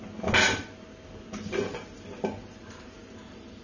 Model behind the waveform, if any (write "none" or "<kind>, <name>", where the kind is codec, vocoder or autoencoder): none